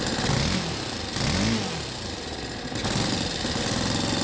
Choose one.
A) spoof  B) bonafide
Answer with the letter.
B